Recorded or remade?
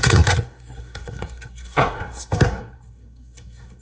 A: remade